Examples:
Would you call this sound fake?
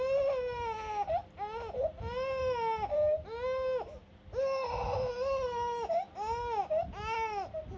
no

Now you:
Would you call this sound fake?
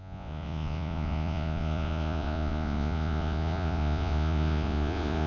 yes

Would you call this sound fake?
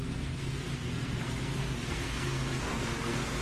yes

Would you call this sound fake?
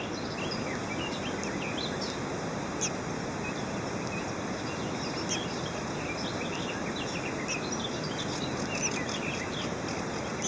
no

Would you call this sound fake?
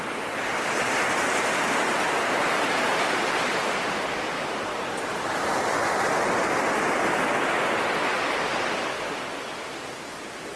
no